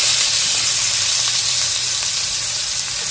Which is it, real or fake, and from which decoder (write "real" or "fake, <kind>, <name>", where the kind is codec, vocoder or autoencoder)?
real